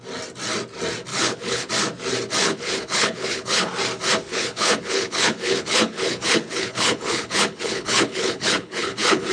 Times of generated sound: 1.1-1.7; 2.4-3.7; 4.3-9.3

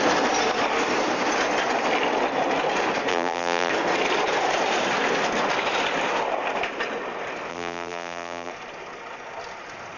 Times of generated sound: 3.1-3.7; 7.5-8.5